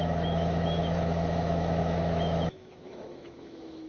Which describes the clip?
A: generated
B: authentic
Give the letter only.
A